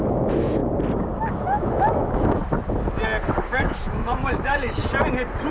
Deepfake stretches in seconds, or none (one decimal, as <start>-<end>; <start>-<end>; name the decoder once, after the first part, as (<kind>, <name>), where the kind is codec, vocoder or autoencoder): 0.0-0.6 (autoencoder, DAC-VAE); 1.3-2.4; 3.5-4.8